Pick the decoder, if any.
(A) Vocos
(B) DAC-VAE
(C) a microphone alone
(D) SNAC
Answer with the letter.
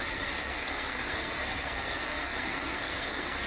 D